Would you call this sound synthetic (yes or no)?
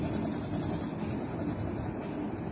no